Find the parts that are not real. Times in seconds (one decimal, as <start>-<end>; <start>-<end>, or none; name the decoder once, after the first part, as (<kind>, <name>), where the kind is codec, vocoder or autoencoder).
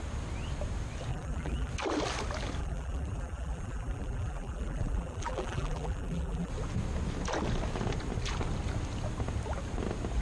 1.1-1.7 (vocoder, BigVGAN v2); 2.6-6.5